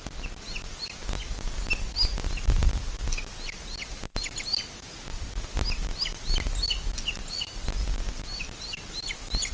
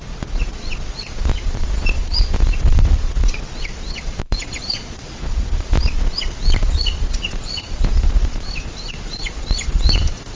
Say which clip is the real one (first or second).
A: first